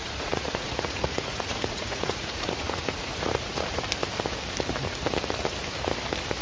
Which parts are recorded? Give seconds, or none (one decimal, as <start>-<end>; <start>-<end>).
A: 3.8-6.4